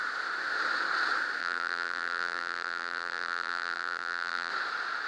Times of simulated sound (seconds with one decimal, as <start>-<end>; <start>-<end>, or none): 1.4-4.5